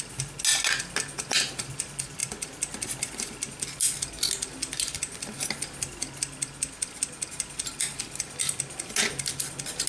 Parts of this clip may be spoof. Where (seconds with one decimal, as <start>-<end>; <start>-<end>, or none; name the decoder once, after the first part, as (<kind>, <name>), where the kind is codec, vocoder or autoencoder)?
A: none